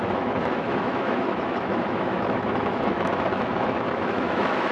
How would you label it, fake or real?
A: fake